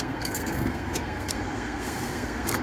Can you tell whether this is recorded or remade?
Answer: remade